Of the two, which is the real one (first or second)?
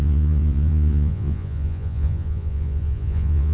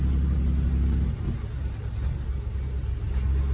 second